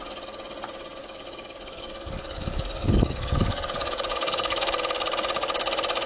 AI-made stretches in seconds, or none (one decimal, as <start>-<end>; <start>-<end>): 1.0-4.7